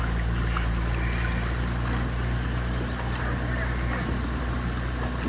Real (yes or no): yes